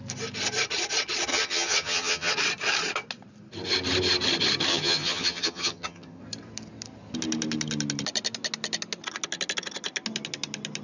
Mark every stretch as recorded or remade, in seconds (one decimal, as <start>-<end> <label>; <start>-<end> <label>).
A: 0.0-1.3 recorded; 1.3-2.3 remade; 2.3-4.7 recorded; 4.7-6.2 remade; 6.2-10.8 recorded